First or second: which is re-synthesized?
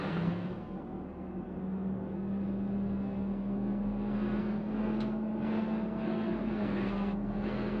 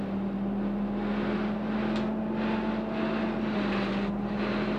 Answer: first